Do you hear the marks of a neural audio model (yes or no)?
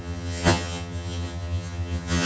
yes